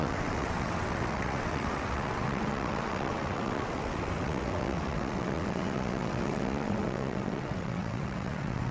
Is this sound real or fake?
fake